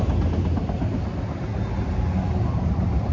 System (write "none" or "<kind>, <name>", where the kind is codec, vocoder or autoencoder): none